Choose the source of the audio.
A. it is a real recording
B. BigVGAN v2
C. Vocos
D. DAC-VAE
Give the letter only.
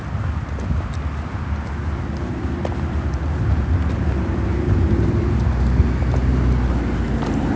A